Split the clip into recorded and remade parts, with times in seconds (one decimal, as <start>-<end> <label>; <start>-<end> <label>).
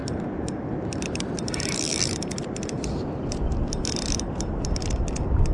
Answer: 0.0-5.5 recorded